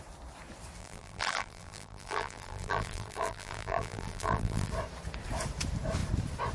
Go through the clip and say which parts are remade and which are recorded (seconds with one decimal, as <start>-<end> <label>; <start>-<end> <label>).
0.0-0.8 recorded; 0.8-4.7 remade; 4.7-6.5 recorded